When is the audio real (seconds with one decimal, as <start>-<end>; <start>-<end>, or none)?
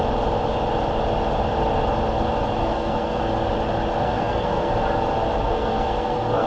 0.0-2.6; 3.2-4.0; 4.7-5.4